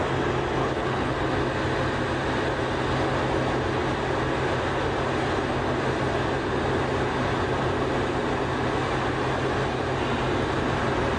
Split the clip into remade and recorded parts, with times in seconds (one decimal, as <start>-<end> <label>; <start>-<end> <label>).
0.0-0.6 recorded; 0.6-1.1 remade; 1.1-11.2 recorded